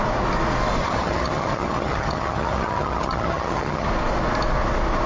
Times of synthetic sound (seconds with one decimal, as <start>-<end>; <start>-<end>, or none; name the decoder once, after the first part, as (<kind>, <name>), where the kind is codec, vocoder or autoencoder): 0.8-3.9 (vocoder, HiFi-GAN)